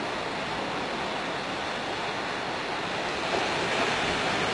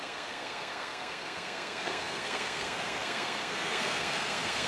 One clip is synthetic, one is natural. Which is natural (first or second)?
first